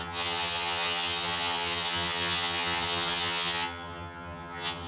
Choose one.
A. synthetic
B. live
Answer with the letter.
A